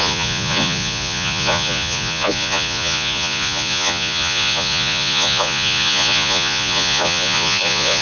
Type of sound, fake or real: fake